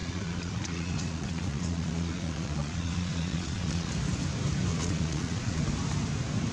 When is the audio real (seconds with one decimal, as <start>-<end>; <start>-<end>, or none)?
3.9-4.7; 5.6-6.5